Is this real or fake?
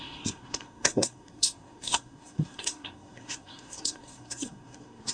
fake